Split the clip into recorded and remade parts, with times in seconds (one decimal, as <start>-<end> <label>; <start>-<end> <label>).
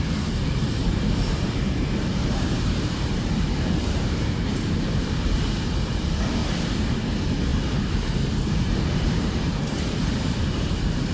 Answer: 0.0-6.4 remade; 6.4-7.0 recorded; 7.0-7.5 remade; 7.5-8.5 recorded; 8.5-11.1 remade